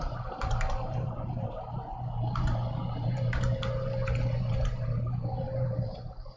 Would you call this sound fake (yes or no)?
yes